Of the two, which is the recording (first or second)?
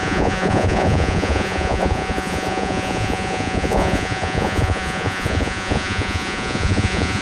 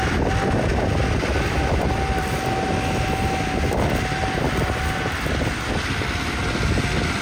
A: second